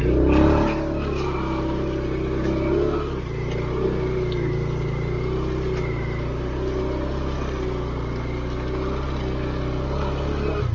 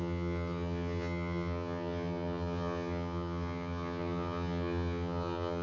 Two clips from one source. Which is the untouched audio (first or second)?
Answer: first